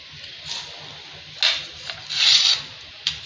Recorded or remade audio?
recorded